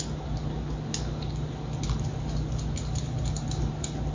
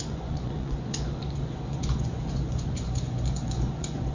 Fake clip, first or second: second